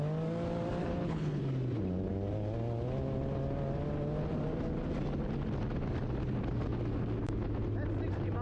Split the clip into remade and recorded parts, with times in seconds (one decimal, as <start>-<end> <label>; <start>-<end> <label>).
0.0-0.8 recorded; 0.8-1.4 remade; 1.4-8.4 recorded